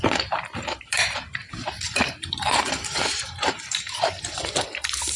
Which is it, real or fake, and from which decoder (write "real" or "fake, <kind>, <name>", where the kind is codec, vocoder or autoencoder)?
fake, vocoder, BigVGAN v2